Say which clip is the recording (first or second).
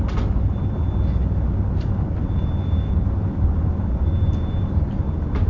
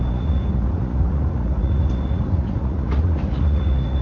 first